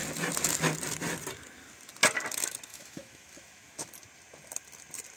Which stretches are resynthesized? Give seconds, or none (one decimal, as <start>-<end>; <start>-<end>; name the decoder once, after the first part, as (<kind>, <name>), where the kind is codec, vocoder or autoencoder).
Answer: 2.7-3.9 (autoencoder, DAC-VAE)

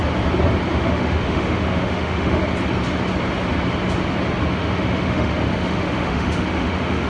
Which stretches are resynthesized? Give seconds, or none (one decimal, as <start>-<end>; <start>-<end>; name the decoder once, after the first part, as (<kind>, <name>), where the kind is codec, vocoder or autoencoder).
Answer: 0.8-2.4 (autoencoder, DAC-VAE); 4.5-7.1

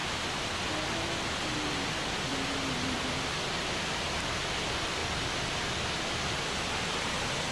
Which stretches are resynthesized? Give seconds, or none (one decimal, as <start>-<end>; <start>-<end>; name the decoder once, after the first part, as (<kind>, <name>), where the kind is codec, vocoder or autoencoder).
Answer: none

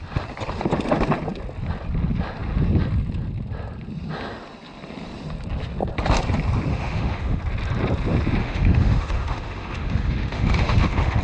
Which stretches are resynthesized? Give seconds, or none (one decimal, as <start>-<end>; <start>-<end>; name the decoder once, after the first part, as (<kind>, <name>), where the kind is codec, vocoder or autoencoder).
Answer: 6.7-7.4 (autoencoder, DAC-VAE); 8.4-11.2